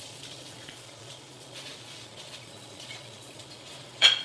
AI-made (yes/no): yes